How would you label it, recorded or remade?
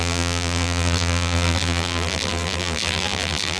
remade